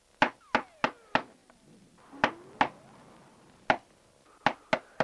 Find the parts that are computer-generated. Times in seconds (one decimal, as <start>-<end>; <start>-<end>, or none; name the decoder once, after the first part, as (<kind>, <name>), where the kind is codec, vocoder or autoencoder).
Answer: none